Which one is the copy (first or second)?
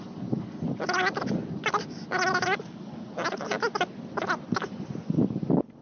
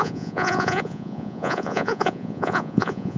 second